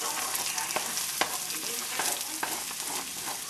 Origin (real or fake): real